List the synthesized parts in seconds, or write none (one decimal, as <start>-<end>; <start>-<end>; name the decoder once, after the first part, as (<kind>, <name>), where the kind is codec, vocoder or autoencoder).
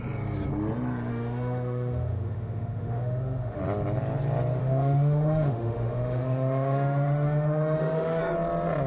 1.1-3.6 (autoencoder, DAC-VAE); 4.6-8.2